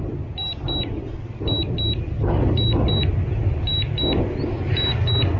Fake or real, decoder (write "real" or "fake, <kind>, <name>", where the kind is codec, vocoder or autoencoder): real